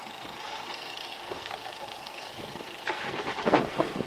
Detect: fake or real fake